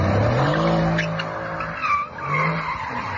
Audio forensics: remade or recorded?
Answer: recorded